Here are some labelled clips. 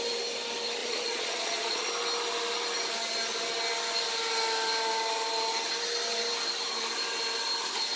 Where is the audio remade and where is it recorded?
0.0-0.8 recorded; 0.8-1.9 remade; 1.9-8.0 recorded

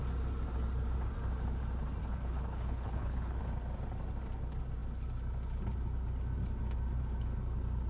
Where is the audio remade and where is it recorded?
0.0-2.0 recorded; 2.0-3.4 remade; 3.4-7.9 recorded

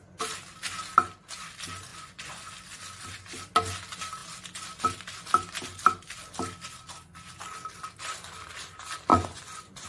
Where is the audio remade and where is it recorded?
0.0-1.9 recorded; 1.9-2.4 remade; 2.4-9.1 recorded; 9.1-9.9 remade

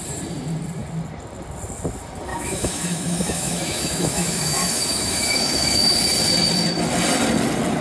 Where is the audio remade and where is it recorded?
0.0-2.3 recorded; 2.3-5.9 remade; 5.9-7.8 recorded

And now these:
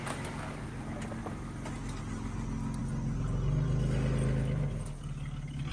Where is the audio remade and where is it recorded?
0.0-5.7 recorded

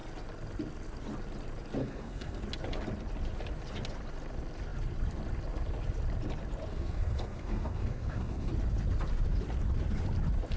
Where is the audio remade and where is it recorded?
0.0-1.8 recorded; 1.8-2.4 remade; 2.4-6.7 recorded; 6.7-8.5 remade; 8.5-10.6 recorded